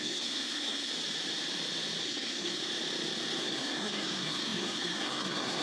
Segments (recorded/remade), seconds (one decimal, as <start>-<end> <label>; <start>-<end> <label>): 0.0-0.9 remade; 0.9-2.0 recorded; 2.0-2.6 remade; 2.6-3.4 recorded; 3.4-5.6 remade

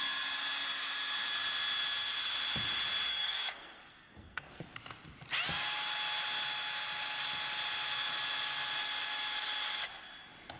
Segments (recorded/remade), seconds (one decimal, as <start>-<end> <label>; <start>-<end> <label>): 0.0-3.1 recorded; 3.1-4.7 remade; 4.7-10.6 recorded